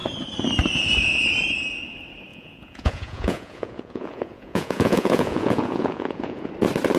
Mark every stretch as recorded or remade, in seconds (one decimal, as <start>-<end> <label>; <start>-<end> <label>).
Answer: 0.0-2.3 recorded; 2.3-6.5 remade; 6.5-7.0 recorded